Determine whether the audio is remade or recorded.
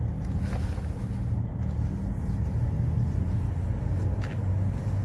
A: recorded